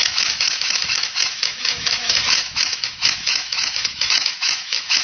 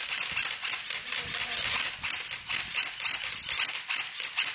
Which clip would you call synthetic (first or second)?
first